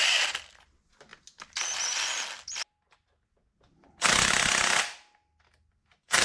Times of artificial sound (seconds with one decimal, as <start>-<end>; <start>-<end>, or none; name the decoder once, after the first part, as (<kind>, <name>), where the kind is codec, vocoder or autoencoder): none